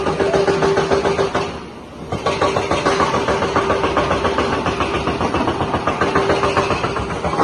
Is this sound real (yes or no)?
yes